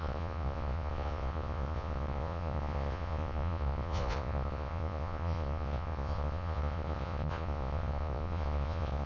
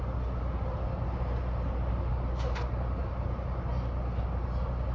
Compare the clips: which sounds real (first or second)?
second